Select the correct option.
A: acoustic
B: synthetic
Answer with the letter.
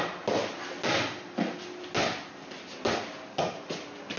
A